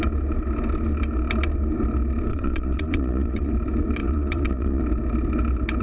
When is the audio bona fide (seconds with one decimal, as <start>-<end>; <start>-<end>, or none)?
0.0-2.3; 3.5-4.0; 4.8-5.8

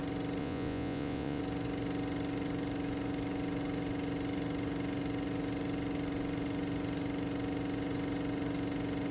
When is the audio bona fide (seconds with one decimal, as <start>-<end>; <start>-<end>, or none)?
0.0-0.4; 1.4-9.1

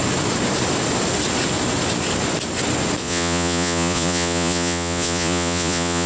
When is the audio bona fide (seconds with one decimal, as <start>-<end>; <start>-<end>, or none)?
0.0-3.0

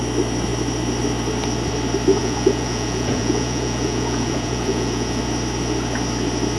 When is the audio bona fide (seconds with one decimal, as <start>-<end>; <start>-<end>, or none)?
0.0-2.2; 5.2-6.6

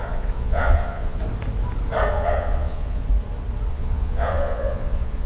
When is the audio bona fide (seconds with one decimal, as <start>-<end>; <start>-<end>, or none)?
1.2-2.1; 3.0-3.7

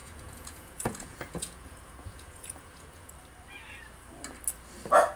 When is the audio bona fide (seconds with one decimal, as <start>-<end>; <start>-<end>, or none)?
3.1-5.2

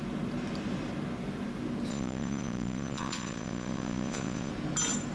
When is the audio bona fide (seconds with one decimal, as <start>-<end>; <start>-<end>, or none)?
0.0-1.9; 4.5-5.1

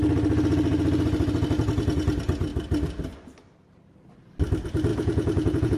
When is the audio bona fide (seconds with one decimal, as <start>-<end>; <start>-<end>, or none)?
0.0-4.9